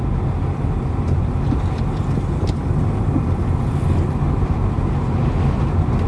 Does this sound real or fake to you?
real